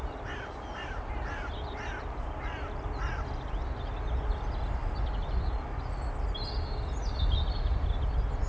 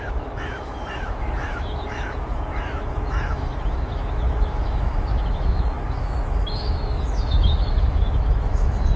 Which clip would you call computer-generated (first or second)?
second